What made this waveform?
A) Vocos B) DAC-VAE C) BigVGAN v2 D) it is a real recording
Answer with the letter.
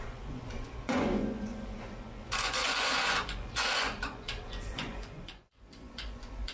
A